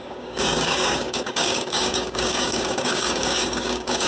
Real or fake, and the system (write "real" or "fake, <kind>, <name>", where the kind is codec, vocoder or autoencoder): fake, codec, DAC